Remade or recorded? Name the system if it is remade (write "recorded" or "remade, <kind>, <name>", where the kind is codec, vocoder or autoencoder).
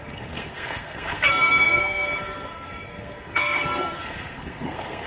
remade, codec, SNAC